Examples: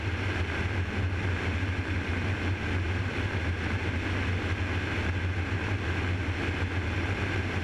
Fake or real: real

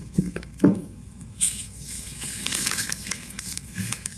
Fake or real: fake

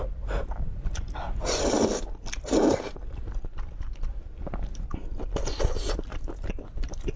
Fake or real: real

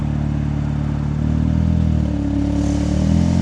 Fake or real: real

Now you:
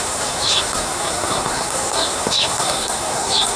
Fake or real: fake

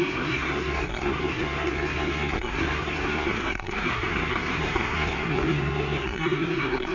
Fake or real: fake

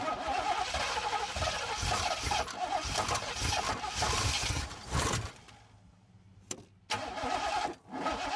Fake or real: real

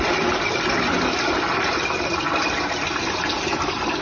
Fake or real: real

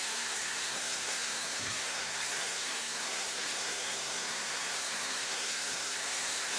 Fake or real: fake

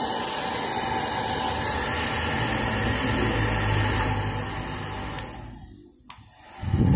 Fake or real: real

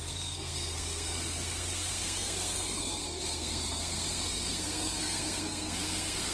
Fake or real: fake